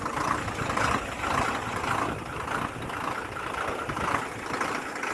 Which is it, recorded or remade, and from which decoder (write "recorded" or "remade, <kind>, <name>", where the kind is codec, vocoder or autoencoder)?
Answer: recorded